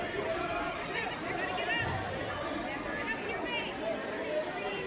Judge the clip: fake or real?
real